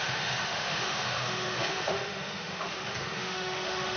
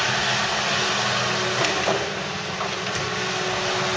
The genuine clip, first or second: second